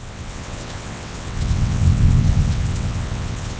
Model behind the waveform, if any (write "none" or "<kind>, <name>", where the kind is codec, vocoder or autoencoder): vocoder, WaveNeXt